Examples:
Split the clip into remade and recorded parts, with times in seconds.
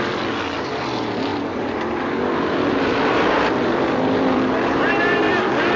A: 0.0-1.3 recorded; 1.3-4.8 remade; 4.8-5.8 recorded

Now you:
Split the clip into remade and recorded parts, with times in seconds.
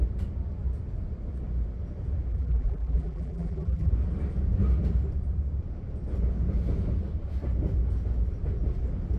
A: 0.0-2.3 recorded; 2.3-3.9 remade; 3.9-9.2 recorded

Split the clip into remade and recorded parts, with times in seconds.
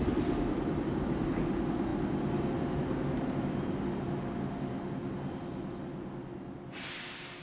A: 0.0-7.4 recorded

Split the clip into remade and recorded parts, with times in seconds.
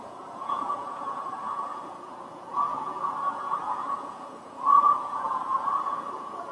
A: 0.0-6.5 remade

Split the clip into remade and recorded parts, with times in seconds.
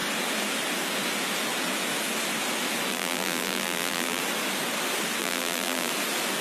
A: 0.0-2.9 recorded; 2.9-4.2 remade; 4.2-5.2 recorded; 5.2-5.9 remade; 5.9-6.4 recorded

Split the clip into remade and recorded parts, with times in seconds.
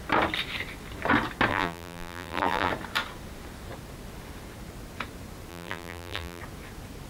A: 0.0-1.5 recorded; 1.5-2.7 remade; 2.7-5.5 recorded; 5.5-6.4 remade; 6.4-7.1 recorded